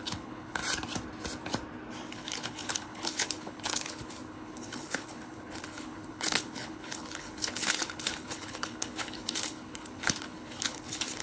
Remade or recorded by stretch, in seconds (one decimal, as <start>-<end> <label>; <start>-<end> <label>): 0.0-0.6 remade; 0.6-2.1 recorded; 2.1-11.2 remade